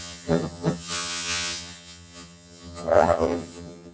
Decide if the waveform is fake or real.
fake